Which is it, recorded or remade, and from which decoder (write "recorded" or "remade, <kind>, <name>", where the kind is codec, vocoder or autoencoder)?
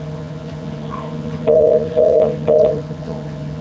remade, vocoder, HiFi-GAN